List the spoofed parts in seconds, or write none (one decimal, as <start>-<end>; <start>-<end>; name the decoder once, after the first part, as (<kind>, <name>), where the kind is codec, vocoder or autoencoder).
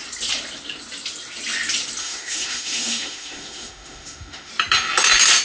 2.0-4.5 (autoencoder, DAC-VAE)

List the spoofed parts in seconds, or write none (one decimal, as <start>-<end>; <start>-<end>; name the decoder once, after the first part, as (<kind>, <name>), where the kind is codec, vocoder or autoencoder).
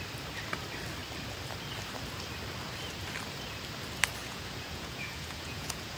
4.2-6.0 (vocoder, Vocos)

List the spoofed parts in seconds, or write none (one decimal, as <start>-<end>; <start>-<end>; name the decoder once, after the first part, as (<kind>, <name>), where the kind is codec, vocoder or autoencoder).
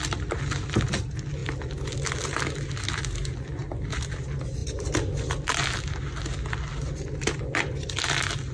none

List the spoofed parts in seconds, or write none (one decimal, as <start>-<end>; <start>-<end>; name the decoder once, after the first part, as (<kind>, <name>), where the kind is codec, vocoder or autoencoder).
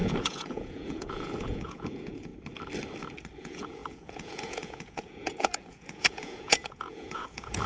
0.0-2.3 (vocoder, Vocos); 3.4-7.7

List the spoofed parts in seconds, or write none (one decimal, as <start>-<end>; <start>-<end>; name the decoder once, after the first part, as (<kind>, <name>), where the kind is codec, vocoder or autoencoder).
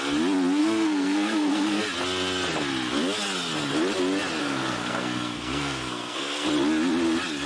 0.6-1.8 (codec, SNAC); 4.4-6.5